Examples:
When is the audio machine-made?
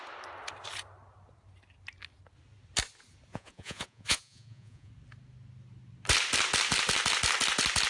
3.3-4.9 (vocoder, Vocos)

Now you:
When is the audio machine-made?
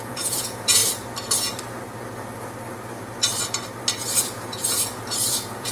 0.0-0.8 (vocoder, Vocos); 4.2-5.7